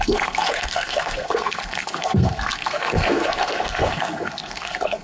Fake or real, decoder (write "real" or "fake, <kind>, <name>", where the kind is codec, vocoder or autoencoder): fake, codec, SNAC